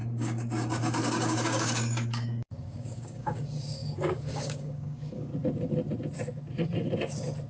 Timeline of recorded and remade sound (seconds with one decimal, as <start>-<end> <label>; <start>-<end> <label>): 0.0-5.3 remade; 5.3-7.5 recorded